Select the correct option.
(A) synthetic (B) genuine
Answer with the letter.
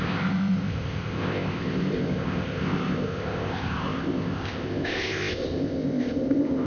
A